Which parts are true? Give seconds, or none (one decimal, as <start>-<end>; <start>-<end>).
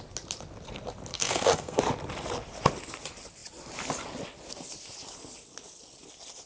0.0-1.1; 1.8-6.5